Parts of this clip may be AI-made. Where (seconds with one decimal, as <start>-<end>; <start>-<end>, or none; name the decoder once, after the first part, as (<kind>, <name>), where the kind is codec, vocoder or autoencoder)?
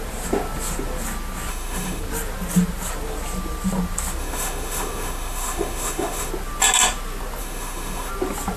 1.5-2.0 (autoencoder, DAC-VAE); 4.2-6.3; 7.4-8.1